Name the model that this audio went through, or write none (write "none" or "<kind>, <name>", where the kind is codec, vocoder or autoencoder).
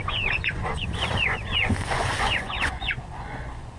vocoder, Vocos